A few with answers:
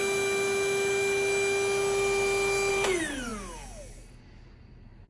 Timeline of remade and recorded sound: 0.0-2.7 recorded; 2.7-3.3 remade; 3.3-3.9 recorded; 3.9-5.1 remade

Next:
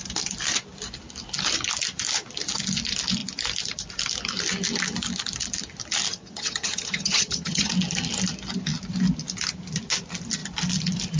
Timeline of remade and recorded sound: 0.0-6.1 recorded; 6.1-7.7 remade; 7.7-11.2 recorded

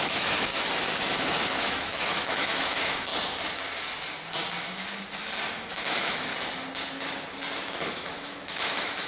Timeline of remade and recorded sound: 0.0-0.5 remade; 0.5-1.1 recorded; 1.1-3.1 remade; 3.1-5.7 recorded; 5.7-6.3 remade; 6.3-7.9 recorded; 7.9-9.1 remade

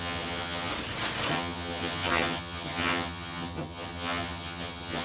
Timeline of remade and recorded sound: 0.0-0.7 remade; 0.7-1.3 recorded; 1.3-5.0 remade